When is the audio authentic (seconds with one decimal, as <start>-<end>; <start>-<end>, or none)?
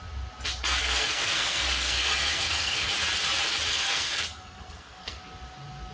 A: 0.0-0.8; 2.9-3.7; 5.2-5.9